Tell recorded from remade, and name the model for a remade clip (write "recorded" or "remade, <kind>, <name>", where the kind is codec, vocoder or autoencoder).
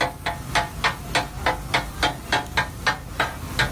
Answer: recorded